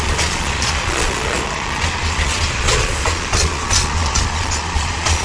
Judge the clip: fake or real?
fake